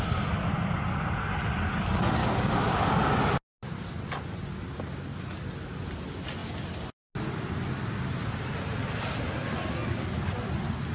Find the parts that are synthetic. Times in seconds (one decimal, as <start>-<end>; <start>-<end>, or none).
2.2-2.9